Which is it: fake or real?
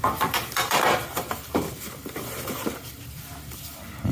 fake